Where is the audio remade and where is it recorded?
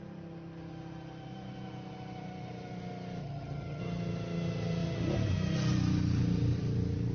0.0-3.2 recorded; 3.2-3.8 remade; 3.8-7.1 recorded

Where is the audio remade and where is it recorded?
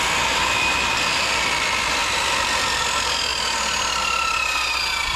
0.0-2.0 recorded; 2.0-2.8 remade; 2.8-5.2 recorded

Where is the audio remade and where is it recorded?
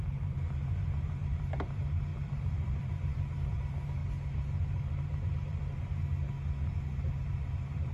0.0-4.0 remade; 4.0-4.9 recorded; 4.9-6.0 remade; 6.0-7.2 recorded; 7.2-7.9 remade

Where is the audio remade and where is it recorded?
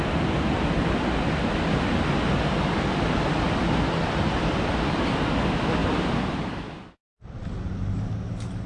0.0-8.7 recorded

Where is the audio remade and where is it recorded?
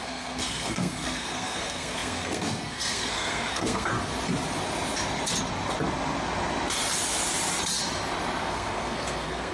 0.0-3.9 remade; 3.9-8.4 recorded; 8.4-9.5 remade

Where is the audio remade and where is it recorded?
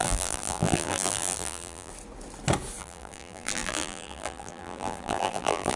0.0-1.9 remade; 1.9-2.8 recorded; 2.8-5.8 remade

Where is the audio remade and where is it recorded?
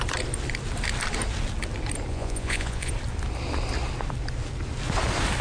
0.0-2.1 recorded; 2.1-2.9 remade; 2.9-5.4 recorded